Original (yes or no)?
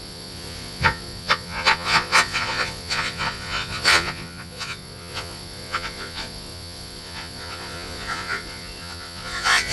no